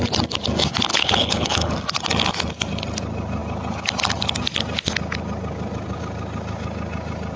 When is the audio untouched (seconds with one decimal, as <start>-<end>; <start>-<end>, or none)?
0.0-0.9; 1.7-7.4